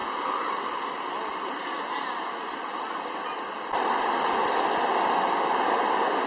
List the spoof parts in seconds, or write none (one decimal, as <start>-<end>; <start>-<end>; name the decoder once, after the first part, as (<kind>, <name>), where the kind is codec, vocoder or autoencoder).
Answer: none